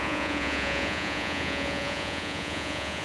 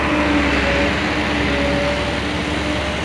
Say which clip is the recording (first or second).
second